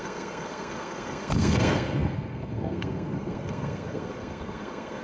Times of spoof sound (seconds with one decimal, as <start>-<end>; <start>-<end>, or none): 0.0-5.0